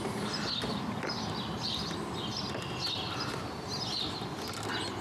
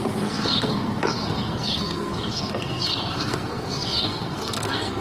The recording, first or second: first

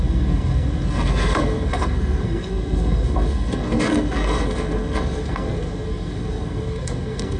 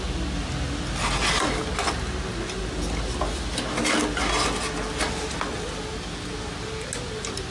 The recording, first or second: second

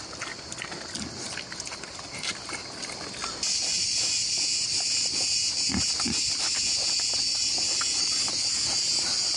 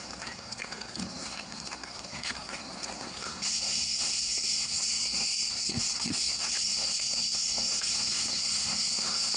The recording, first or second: first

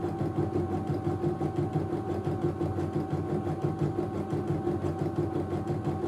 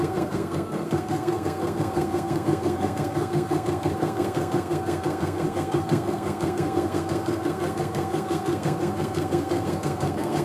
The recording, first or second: first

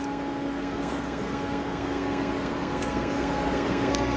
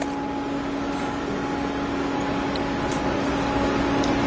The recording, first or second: second